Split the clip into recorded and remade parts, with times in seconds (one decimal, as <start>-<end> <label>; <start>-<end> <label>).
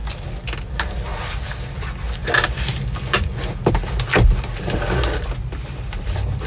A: 0.0-6.5 recorded